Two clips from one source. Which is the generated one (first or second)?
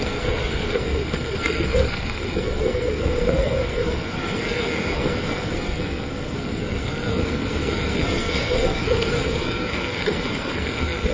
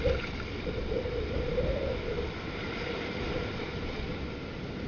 first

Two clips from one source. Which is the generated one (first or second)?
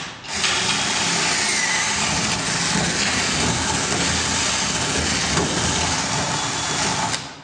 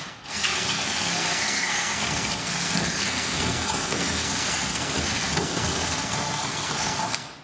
second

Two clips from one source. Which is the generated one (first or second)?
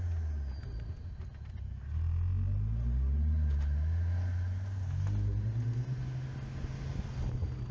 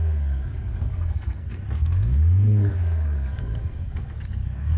second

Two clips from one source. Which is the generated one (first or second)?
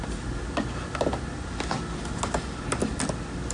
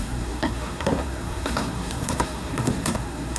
second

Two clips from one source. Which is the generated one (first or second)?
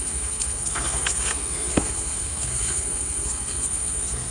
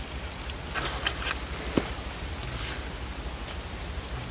first